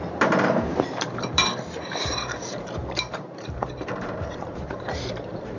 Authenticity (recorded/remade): remade